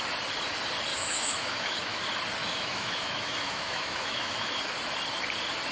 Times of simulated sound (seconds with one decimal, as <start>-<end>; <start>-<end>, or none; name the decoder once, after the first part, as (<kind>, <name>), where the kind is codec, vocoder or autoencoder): 0.9-2.0 (autoencoder, DAC-VAE); 2.4-4.6